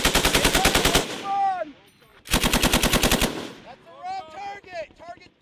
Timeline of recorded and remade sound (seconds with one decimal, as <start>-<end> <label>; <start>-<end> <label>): 0.0-5.4 recorded